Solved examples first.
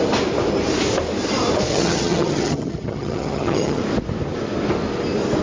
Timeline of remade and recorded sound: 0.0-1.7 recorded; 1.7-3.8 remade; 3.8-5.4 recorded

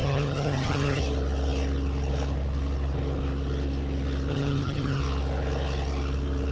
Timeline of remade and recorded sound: 0.0-1.0 remade; 1.0-4.3 recorded; 4.3-5.0 remade; 5.0-6.5 recorded

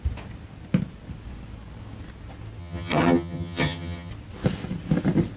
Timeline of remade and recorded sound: 0.0-2.6 recorded; 2.6-4.1 remade; 4.1-5.4 recorded

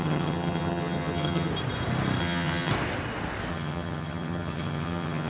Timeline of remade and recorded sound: 0.0-1.5 remade; 1.5-2.2 recorded; 2.2-2.7 remade; 2.7-3.5 recorded; 3.5-5.3 remade

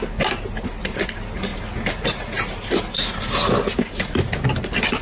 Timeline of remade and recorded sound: 0.0-5.0 recorded

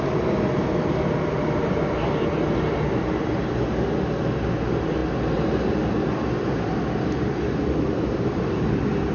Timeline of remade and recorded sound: 0.0-9.1 recorded

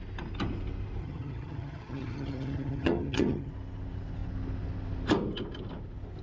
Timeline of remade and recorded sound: 0.0-1.0 recorded; 1.0-3.5 remade; 3.5-6.2 recorded